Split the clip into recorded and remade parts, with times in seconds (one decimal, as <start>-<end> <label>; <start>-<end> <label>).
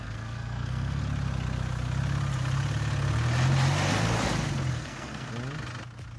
0.0-1.0 remade; 1.0-4.7 recorded; 4.7-5.3 remade; 5.3-6.2 recorded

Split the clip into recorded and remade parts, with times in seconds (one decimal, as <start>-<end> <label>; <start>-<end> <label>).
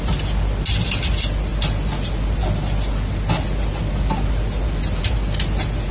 0.0-5.9 recorded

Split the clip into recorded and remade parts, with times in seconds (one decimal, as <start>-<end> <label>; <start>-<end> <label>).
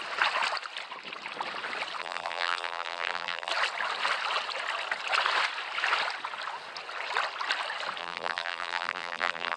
0.0-2.0 recorded; 2.0-3.5 remade; 3.5-8.0 recorded; 8.0-9.6 remade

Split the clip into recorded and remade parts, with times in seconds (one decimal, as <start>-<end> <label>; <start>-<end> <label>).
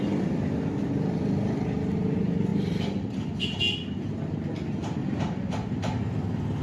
0.0-2.5 recorded; 2.5-4.0 remade; 4.0-5.0 recorded; 5.0-6.1 remade; 6.1-6.6 recorded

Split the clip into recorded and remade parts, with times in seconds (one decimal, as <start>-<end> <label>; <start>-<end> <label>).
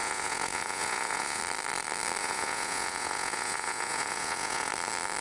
0.0-1.4 remade; 1.4-2.2 recorded; 2.2-4.7 remade; 4.7-5.2 recorded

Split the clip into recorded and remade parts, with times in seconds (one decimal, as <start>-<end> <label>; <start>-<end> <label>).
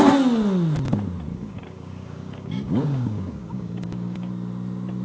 0.0-1.3 recorded; 1.3-4.3 remade; 4.3-5.0 recorded